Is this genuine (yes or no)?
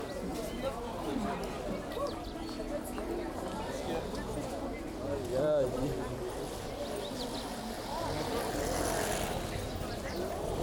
yes